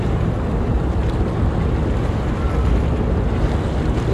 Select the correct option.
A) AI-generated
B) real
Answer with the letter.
B